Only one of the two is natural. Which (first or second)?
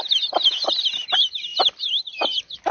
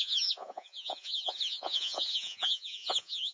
first